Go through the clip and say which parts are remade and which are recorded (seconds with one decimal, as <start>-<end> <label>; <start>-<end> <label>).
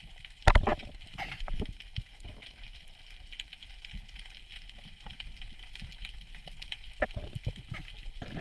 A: 0.0-8.4 recorded